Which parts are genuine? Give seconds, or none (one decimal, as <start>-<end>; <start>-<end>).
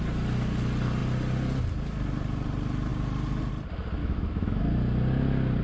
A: 0.0-4.0; 4.6-5.6